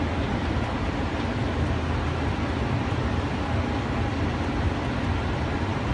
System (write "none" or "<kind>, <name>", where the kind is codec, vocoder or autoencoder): none